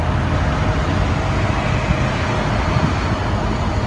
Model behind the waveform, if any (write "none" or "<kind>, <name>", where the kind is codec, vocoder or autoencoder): none